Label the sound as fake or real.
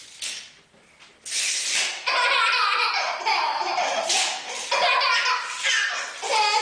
real